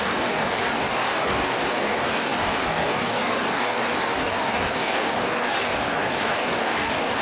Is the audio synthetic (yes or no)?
yes